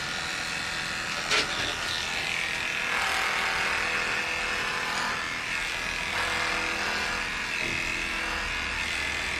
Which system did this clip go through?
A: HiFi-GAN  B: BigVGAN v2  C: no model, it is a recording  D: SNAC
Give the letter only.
C